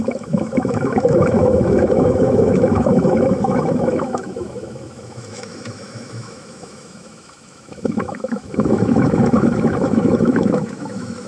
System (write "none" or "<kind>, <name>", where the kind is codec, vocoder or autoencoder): autoencoder, DAC-VAE